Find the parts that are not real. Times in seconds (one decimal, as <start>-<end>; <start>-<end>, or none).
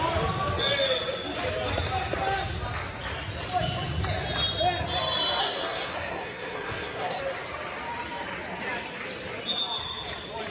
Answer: 5.4-7.2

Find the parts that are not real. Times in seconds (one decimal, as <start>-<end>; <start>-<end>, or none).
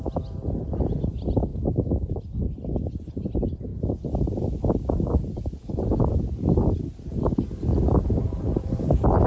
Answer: 1.5-2.1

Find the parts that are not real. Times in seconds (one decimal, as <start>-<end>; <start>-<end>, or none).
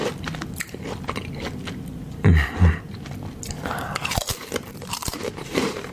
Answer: 3.5-5.9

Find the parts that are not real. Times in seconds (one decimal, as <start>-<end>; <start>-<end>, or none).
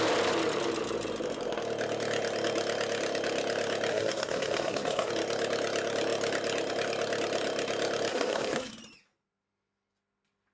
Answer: 3.9-5.1; 8.1-8.7